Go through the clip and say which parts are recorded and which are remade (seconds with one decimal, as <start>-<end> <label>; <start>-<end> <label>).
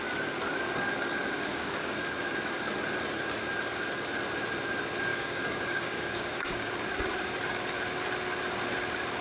0.0-1.2 recorded; 1.2-2.0 remade; 2.0-5.1 recorded; 5.1-6.7 remade; 6.7-9.2 recorded